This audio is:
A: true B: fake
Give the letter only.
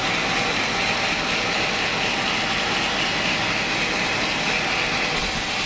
A